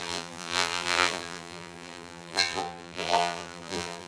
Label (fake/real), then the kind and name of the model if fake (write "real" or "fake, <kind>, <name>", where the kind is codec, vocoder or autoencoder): fake, vocoder, BigVGAN v2